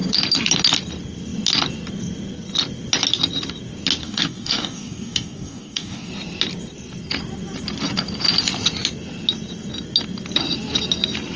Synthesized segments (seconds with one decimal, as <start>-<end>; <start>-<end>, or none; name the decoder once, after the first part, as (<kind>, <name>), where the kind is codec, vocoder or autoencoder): 4.0-6.1 (codec, DAC)